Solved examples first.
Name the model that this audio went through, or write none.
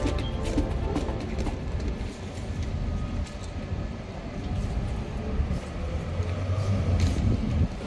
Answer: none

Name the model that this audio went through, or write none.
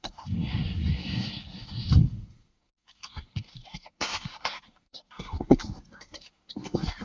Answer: codec, SNAC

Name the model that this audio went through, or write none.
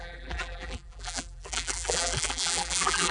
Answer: vocoder, BigVGAN v2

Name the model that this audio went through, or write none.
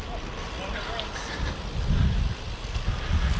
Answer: none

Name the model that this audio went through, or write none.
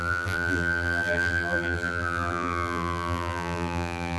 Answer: vocoder, BigVGAN v2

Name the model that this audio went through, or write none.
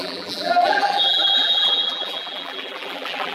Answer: vocoder, BigVGAN v2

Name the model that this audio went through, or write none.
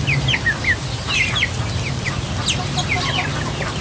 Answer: none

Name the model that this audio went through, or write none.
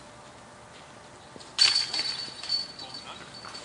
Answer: none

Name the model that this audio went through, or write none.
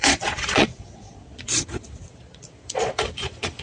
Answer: vocoder, Vocos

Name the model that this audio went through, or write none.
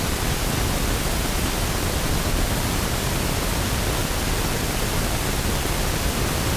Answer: none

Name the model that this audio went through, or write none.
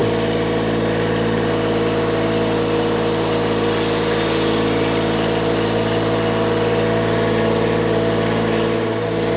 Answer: none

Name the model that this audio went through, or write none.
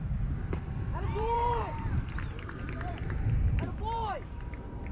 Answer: vocoder, BigVGAN v2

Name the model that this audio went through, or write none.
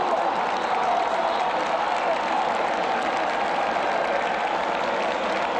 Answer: none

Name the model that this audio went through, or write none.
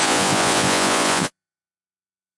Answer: vocoder, Vocos